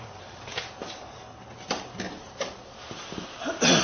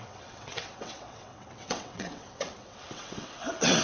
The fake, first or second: second